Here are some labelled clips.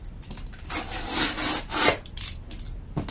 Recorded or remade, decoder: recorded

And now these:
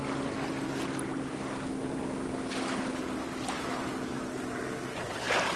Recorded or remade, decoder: recorded